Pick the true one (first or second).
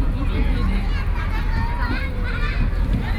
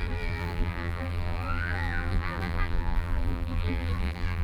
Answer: first